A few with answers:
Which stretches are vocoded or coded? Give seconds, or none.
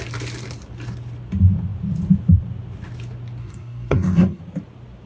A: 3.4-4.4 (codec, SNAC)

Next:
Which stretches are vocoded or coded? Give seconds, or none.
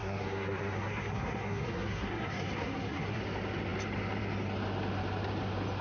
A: 0.0-3.2 (codec, SNAC)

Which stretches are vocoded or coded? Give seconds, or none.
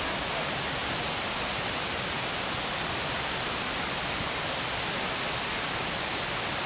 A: none